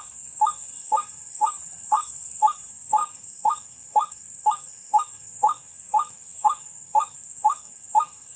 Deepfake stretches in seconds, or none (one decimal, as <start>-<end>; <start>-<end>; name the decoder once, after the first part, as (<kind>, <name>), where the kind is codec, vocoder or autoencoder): 0.0-8.4 (codec, SNAC)